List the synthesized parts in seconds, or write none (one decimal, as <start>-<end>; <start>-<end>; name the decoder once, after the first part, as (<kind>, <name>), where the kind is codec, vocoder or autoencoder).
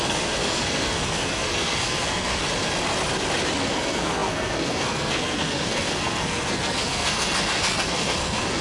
0.0-2.4 (codec, SNAC); 3.6-8.6